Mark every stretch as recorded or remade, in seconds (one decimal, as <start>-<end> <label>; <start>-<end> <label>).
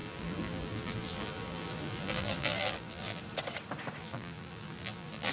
0.0-3.2 remade; 3.2-4.0 recorded; 4.0-5.3 remade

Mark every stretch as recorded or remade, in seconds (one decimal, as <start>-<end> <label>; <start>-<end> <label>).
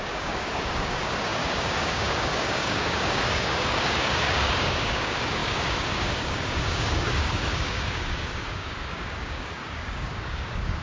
0.0-10.8 remade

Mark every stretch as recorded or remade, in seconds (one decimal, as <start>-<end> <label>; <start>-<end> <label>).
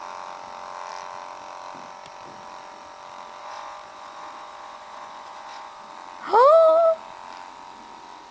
0.0-3.4 recorded; 3.4-5.9 remade; 5.9-8.3 recorded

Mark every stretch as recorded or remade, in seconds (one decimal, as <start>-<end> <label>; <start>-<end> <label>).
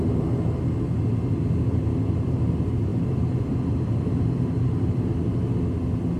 0.0-6.2 recorded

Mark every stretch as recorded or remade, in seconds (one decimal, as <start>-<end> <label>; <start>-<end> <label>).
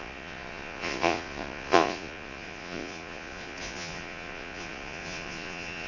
0.0-5.9 remade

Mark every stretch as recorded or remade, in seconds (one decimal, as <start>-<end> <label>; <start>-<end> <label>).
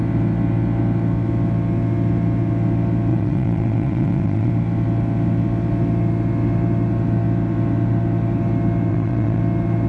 0.0-3.1 recorded; 3.1-4.5 remade; 4.5-8.9 recorded; 8.9-9.4 remade; 9.4-9.9 recorded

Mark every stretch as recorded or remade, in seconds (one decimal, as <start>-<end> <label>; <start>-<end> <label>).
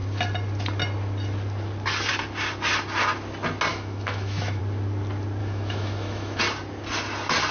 0.0-3.7 recorded; 3.7-4.6 remade; 4.6-5.4 recorded; 5.4-6.4 remade; 6.4-7.5 recorded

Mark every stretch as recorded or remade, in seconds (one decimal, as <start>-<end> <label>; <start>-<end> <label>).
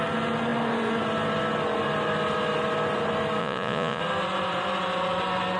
0.0-3.4 recorded; 3.4-4.0 remade; 4.0-5.6 recorded